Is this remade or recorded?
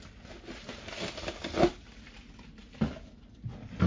recorded